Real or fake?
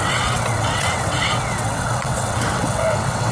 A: fake